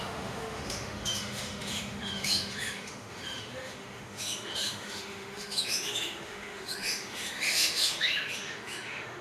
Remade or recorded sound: remade